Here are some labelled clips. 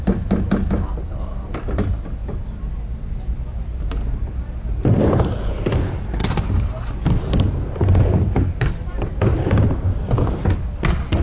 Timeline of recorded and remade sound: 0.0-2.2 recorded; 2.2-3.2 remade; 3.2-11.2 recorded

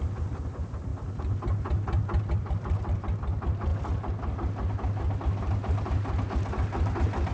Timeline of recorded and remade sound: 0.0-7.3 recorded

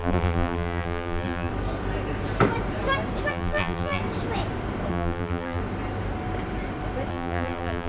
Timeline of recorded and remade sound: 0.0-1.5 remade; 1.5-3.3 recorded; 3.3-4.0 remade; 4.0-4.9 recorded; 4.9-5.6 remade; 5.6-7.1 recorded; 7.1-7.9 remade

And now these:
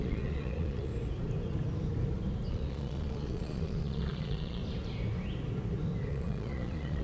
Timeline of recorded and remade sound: 0.0-0.9 remade; 0.9-2.5 recorded; 2.5-4.6 remade; 4.6-6.1 recorded; 6.1-7.0 remade

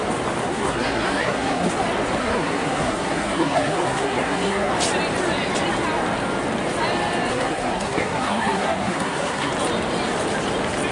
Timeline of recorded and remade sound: 0.0-0.4 recorded; 0.4-1.7 remade; 1.7-2.2 recorded; 2.2-4.7 remade; 4.7-7.3 recorded; 7.3-9.5 remade; 9.5-10.9 recorded

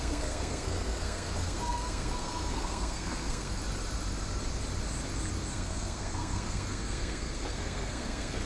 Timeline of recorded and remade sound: 0.0-3.6 remade; 3.6-5.5 recorded; 5.5-8.5 remade

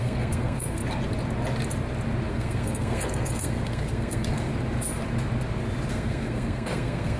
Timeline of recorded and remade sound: 0.0-0.8 remade; 0.8-2.3 recorded; 2.3-4.5 remade; 4.5-5.9 recorded; 5.9-7.2 remade